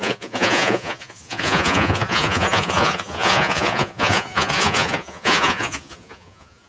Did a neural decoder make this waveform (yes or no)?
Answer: yes